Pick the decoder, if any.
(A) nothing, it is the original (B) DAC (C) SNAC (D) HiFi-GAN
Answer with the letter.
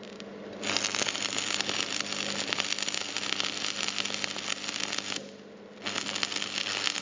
A